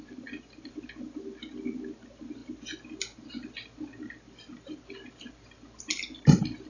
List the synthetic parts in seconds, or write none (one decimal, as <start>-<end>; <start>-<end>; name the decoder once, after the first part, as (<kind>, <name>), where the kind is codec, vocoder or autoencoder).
none